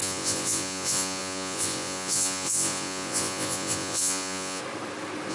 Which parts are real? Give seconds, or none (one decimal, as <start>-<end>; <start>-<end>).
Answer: 4.6-5.3